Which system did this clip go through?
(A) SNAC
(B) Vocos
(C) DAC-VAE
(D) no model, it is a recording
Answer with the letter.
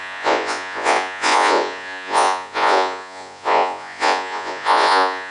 B